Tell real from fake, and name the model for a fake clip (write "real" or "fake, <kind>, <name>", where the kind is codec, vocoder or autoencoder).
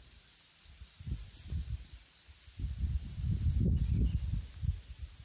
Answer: real